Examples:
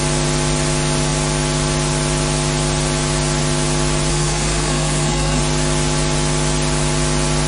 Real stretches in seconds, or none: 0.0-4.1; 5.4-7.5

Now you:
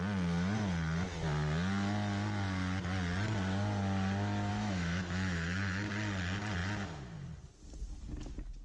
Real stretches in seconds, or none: 0.0-4.5; 5.9-8.6

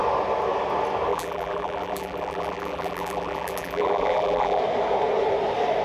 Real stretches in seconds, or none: 0.0-1.1; 4.6-5.8

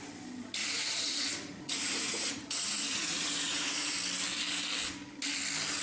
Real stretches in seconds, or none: 0.0-0.6; 3.9-5.8